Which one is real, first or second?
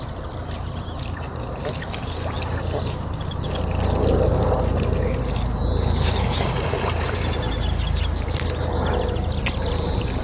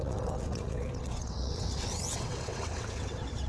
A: first